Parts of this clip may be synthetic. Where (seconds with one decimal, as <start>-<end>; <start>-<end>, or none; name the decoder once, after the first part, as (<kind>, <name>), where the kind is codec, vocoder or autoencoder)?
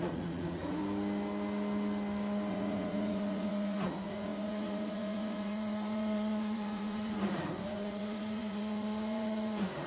0.0-0.8 (vocoder, Vocos); 2.5-9.9